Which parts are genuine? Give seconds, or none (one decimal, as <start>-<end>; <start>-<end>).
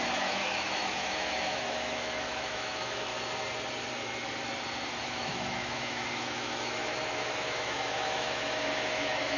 3.1-5.0